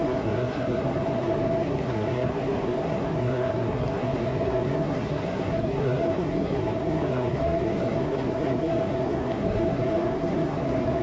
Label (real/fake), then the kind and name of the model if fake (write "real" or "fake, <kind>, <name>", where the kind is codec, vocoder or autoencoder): fake, codec, SNAC